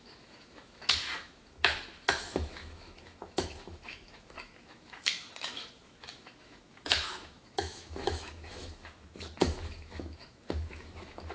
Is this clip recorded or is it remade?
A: remade